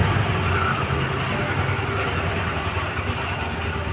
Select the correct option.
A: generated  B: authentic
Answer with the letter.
B